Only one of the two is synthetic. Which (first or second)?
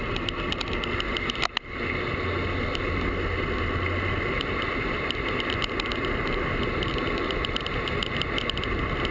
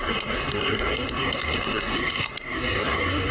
second